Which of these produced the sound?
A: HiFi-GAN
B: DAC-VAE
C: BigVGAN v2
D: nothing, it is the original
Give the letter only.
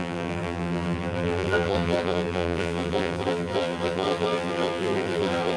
C